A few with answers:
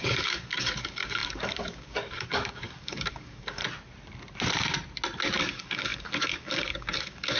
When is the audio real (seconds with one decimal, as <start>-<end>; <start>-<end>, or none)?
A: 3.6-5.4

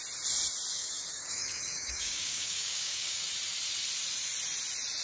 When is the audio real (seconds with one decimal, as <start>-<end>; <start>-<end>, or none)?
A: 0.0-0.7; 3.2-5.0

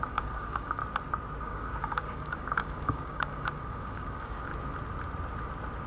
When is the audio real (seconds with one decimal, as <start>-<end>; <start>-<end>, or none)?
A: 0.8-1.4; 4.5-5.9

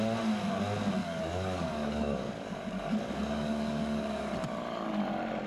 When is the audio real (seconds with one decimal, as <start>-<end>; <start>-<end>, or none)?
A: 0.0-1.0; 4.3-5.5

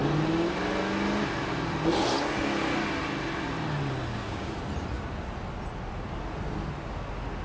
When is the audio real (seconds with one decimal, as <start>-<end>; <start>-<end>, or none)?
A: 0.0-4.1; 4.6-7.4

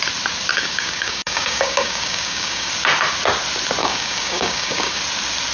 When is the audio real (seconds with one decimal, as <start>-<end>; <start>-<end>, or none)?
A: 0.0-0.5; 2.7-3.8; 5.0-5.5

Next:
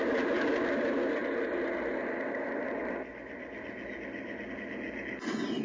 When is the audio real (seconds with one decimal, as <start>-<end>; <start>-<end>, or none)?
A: 0.0-5.6

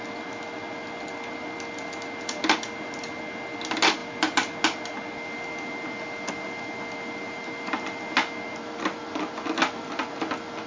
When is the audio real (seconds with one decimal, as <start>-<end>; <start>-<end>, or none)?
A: 0.0-10.7